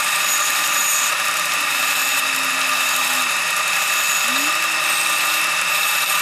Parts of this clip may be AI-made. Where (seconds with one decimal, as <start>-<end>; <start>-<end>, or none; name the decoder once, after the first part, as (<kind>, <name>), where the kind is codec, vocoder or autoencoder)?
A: 0.0-2.0 (vocoder, BigVGAN v2); 5.7-6.2